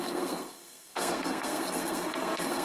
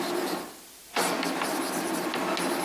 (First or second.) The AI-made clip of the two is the first